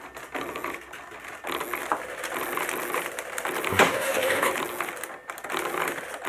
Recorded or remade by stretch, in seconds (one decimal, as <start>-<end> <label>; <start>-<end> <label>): 0.0-3.7 recorded; 3.7-4.5 remade; 4.5-6.3 recorded